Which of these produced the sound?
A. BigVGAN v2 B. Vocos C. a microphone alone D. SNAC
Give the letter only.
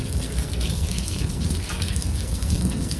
D